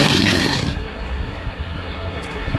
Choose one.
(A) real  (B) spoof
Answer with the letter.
B